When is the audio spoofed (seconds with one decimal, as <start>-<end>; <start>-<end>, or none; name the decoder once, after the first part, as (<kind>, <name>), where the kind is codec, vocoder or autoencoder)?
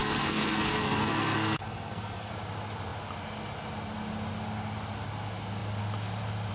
0.0-2.3 (codec, SNAC)